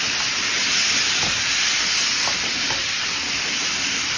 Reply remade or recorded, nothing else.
recorded